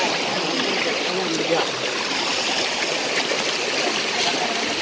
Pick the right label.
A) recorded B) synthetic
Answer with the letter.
A